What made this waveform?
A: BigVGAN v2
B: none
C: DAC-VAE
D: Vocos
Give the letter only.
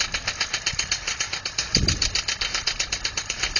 B